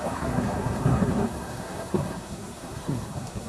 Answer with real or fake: fake